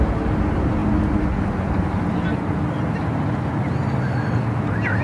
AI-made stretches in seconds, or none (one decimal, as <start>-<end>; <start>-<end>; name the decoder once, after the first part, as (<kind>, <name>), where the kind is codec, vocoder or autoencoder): none